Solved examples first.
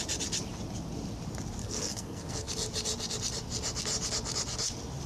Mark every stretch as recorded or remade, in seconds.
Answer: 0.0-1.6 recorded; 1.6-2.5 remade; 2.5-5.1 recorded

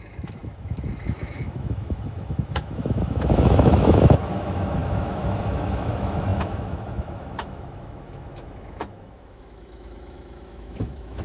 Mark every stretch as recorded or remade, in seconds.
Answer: 0.0-11.2 remade

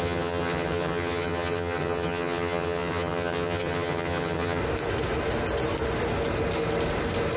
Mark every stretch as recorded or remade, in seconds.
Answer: 0.0-4.6 remade; 4.6-7.4 recorded

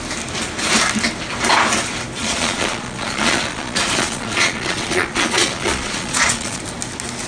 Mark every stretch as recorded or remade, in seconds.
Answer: 0.0-2.2 recorded; 2.2-6.6 remade; 6.6-7.3 recorded

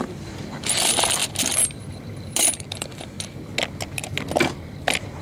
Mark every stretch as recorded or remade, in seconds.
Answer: 0.0-3.5 remade; 3.5-5.2 recorded